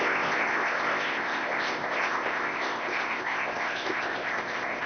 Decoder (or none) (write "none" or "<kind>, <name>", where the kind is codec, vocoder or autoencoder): codec, ZipCodec